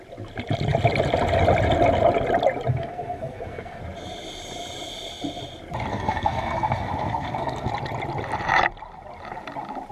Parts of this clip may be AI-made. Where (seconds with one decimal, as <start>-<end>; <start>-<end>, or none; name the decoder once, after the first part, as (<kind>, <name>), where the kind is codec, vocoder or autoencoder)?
2.7-3.8 (codec, SNAC); 5.9-7.7